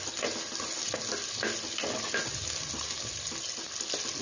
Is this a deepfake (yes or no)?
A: no